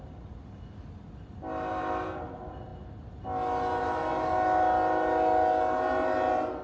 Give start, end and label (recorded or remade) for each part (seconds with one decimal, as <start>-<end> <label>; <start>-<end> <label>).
0.0-6.6 recorded

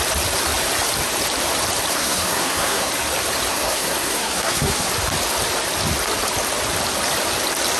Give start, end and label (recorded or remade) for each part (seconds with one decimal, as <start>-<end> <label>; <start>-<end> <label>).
0.0-1.9 recorded; 1.9-2.9 remade; 2.9-3.5 recorded; 3.5-4.9 remade; 4.9-7.8 recorded